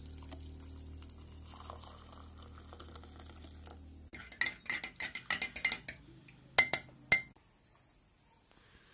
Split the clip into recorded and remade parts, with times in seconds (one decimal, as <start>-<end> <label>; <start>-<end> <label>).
0.0-8.9 recorded